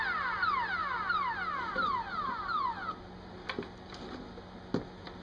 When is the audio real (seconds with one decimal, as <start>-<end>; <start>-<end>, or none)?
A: 0.0-5.2